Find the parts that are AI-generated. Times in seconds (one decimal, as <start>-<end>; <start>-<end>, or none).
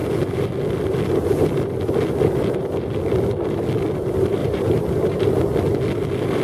4.4-5.2